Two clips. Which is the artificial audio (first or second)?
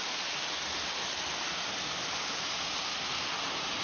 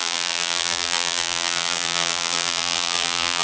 second